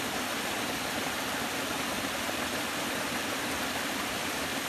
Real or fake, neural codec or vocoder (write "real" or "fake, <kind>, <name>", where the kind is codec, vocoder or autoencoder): fake, vocoder, BigVGAN v2